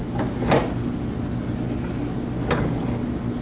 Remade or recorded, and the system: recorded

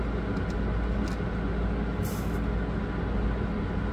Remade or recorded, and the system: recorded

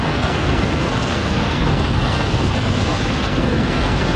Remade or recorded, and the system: remade, codec, SNAC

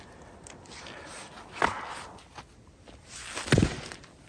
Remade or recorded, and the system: recorded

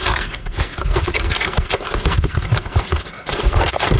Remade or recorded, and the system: remade, codec, SNAC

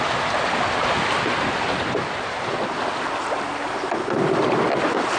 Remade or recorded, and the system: recorded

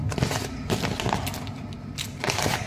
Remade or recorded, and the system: recorded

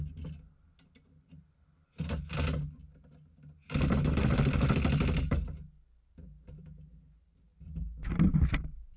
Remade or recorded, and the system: recorded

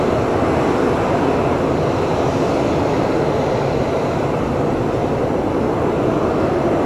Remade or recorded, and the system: recorded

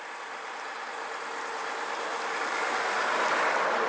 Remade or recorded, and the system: recorded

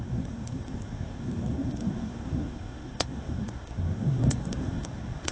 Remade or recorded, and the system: remade, codec, SNAC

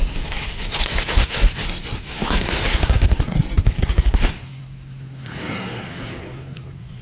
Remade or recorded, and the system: remade, codec, SNAC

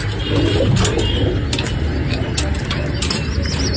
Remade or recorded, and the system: recorded